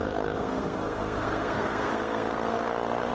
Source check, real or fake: fake